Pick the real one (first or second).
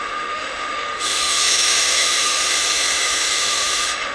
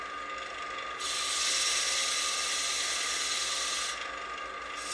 second